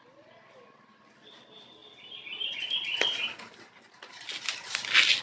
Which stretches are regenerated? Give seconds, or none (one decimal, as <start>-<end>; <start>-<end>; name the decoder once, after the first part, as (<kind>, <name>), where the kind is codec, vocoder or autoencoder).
none